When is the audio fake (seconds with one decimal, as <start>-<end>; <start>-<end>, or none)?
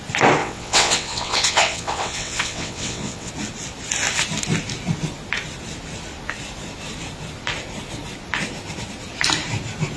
0.4-3.3